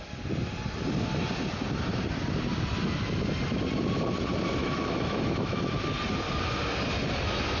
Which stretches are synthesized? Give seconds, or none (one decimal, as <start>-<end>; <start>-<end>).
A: 4.6-5.6